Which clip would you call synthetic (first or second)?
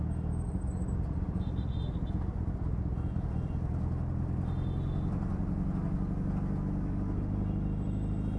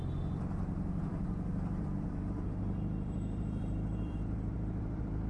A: second